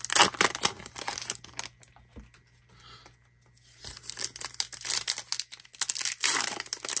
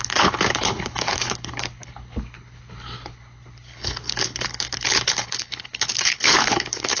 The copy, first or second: second